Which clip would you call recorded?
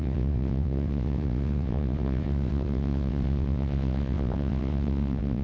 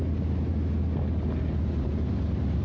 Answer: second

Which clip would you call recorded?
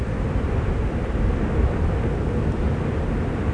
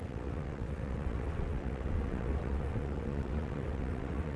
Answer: first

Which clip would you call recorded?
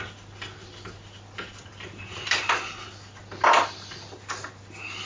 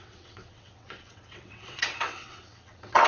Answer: first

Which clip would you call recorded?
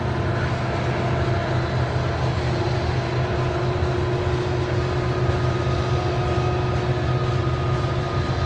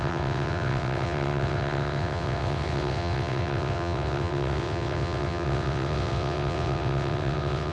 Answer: first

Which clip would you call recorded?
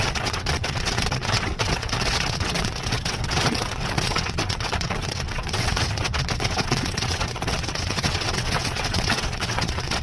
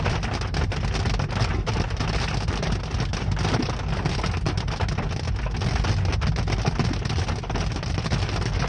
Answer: second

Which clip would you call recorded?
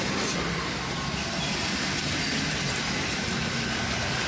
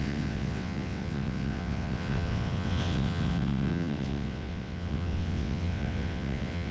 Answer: first